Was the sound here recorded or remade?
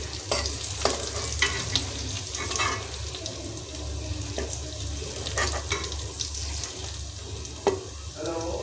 recorded